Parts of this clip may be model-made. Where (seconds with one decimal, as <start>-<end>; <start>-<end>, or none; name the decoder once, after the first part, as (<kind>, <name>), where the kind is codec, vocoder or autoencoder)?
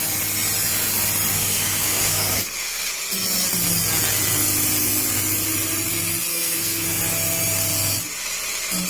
1.3-2.9 (codec, SNAC); 6.3-7.0